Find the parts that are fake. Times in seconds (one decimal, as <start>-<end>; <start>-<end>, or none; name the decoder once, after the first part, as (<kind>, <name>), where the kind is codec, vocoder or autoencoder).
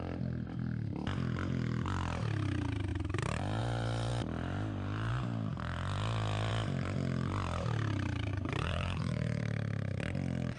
8.3-9.4 (vocoder, Vocos)